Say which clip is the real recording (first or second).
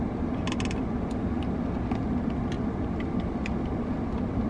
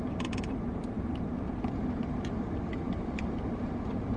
first